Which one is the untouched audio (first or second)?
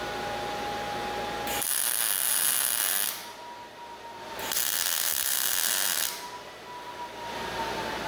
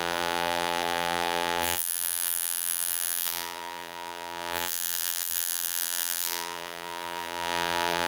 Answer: first